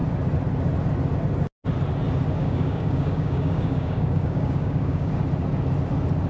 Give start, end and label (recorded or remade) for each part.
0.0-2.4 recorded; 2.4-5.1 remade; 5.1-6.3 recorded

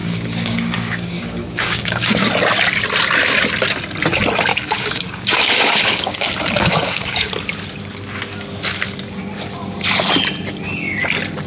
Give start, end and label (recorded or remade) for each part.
0.0-2.3 remade; 2.3-4.5 recorded; 4.5-7.3 remade; 7.3-11.5 recorded

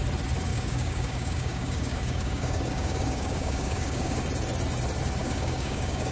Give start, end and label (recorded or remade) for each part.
0.0-0.5 recorded; 0.5-4.2 remade; 4.2-5.2 recorded; 5.2-6.1 remade

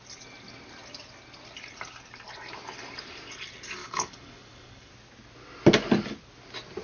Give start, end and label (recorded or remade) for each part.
0.0-3.8 recorded; 3.8-4.9 remade; 4.9-6.8 recorded